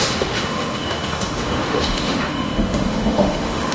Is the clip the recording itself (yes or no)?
no